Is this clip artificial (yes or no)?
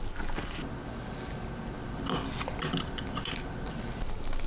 no